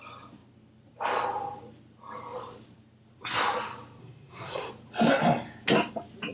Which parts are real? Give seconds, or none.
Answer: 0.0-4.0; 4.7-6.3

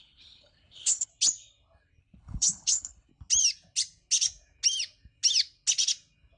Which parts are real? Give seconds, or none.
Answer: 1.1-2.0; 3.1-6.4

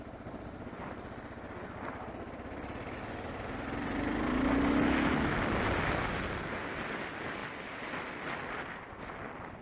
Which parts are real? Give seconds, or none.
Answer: 0.0-9.6